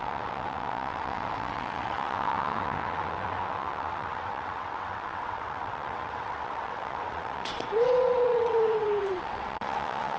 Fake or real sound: fake